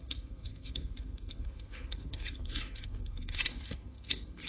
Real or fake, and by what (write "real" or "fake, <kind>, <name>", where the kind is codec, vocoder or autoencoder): fake, codec, SNAC